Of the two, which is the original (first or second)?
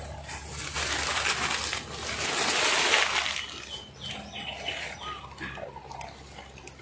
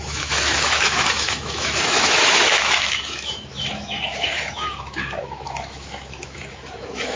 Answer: first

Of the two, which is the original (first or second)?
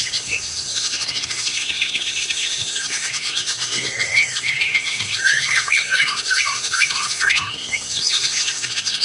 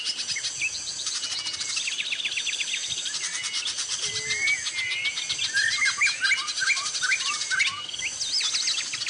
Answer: second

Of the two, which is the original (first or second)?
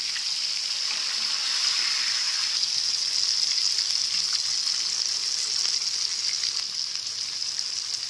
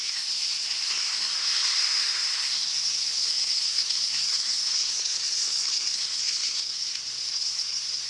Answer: first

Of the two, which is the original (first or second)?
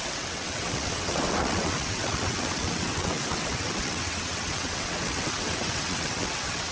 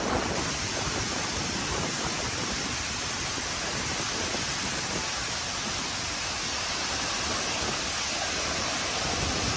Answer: second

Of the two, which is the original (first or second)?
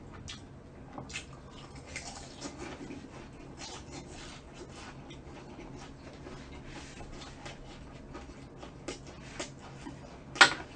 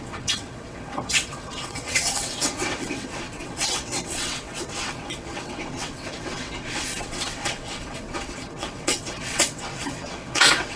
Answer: first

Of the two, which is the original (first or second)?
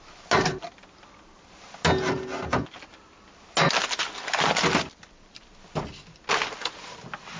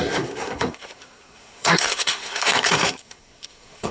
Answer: first